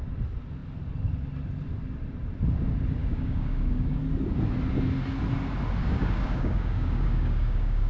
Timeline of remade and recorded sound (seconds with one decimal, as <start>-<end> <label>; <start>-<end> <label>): 0.0-3.0 recorded; 3.0-4.0 remade; 4.0-5.8 recorded; 5.8-7.9 remade